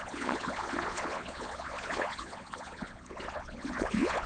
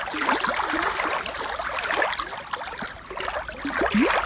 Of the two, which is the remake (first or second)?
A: first